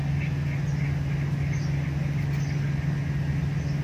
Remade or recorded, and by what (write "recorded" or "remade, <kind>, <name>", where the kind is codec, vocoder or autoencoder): recorded